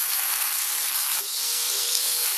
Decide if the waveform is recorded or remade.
remade